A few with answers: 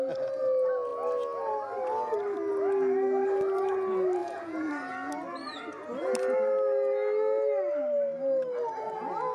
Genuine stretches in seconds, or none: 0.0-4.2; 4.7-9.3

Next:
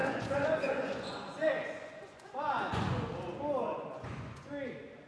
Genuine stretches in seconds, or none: 3.1-3.6; 4.5-5.1

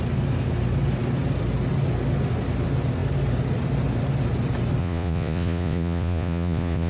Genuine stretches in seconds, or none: 0.0-4.8

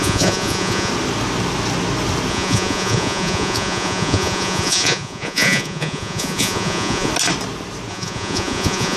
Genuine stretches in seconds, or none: 0.9-2.3; 7.1-7.9

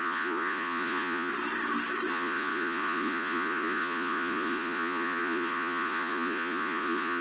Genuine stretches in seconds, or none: 1.3-2.1

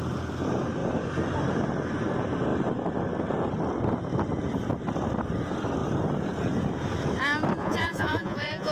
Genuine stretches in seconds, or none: 0.0-7.6

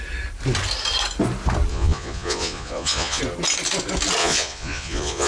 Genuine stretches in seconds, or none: 0.0-1.7; 3.2-4.2

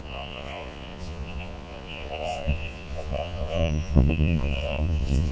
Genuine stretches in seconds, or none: none